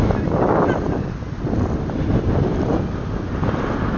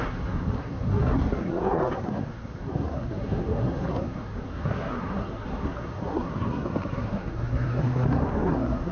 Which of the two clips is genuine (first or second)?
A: first